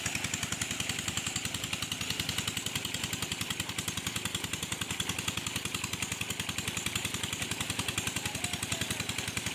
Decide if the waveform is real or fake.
real